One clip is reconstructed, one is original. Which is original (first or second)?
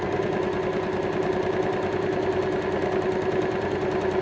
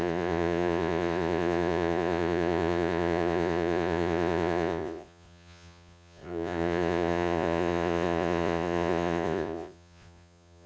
first